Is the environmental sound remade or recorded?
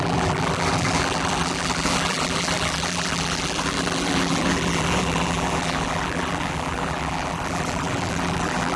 remade